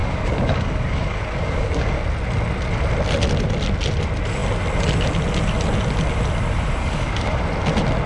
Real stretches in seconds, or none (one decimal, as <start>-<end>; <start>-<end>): 2.0-6.8; 7.4-8.1